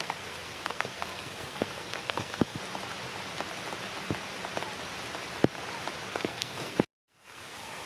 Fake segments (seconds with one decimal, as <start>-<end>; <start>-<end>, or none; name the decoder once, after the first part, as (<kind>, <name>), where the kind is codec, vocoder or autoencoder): 0.0-2.6 (codec, SNAC); 6.1-7.9